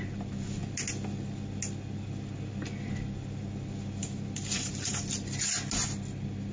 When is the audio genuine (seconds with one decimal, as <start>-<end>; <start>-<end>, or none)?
0.0-4.0; 5.0-6.5